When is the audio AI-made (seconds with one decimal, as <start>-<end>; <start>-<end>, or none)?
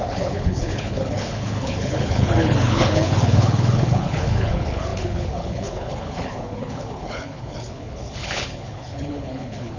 0.0-9.8